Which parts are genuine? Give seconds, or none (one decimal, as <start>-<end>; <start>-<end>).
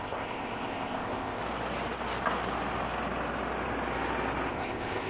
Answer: 1.4-4.5